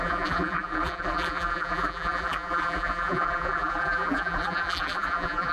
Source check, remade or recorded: remade